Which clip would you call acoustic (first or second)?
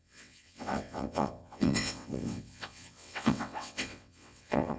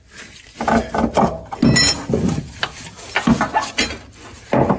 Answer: second